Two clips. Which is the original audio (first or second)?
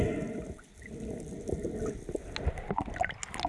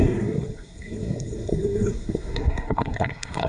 first